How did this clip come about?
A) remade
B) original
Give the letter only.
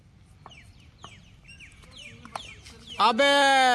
B